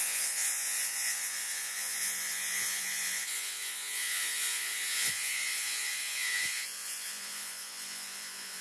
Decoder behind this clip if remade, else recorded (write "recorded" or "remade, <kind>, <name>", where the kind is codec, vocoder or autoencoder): remade, vocoder, Vocos